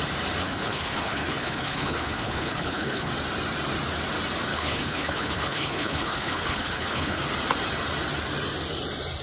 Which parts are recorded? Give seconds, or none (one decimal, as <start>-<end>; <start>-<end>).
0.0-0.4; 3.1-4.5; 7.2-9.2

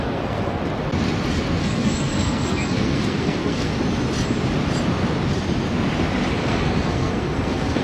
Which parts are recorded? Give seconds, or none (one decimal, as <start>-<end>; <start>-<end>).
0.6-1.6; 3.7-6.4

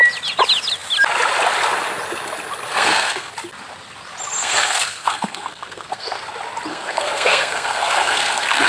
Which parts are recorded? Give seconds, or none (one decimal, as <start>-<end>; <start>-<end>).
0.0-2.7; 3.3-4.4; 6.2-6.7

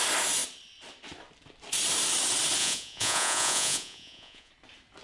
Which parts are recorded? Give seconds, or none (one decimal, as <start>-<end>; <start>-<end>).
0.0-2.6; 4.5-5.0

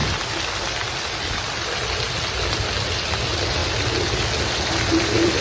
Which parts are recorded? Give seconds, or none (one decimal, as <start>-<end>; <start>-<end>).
0.0-5.4

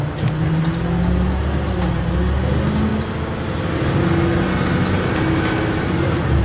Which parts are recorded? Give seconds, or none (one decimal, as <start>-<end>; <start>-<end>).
0.0-6.4